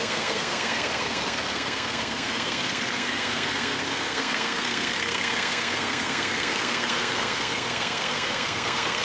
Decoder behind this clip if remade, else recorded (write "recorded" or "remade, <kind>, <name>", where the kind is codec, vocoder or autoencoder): remade, codec, SNAC